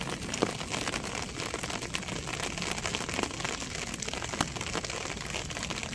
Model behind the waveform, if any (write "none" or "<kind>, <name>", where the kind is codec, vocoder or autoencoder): none